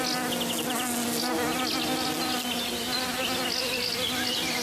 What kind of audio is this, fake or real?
real